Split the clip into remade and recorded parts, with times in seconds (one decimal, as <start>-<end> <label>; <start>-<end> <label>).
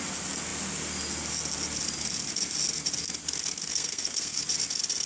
0.0-3.7 recorded; 3.7-4.4 remade; 4.4-5.1 recorded